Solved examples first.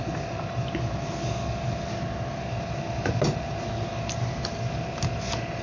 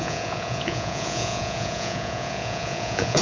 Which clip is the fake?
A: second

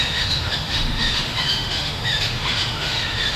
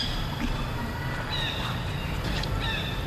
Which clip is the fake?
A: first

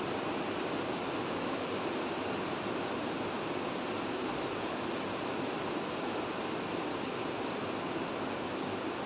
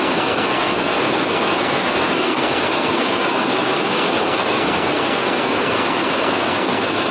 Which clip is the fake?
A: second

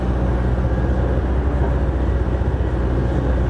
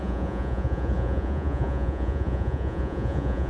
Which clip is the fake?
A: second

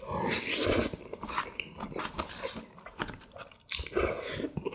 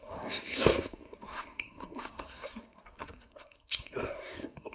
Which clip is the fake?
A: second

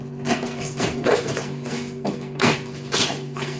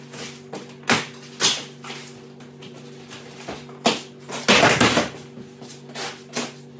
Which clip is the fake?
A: first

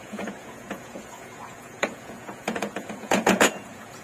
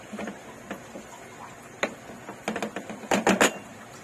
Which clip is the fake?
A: first